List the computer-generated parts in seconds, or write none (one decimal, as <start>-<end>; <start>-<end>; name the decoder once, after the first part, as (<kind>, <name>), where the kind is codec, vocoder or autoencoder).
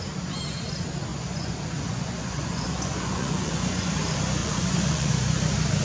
1.1-3.9 (vocoder, Vocos); 4.4-5.1